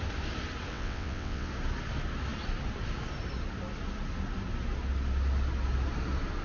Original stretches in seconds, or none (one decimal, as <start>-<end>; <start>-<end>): 0.0-0.7; 1.5-6.4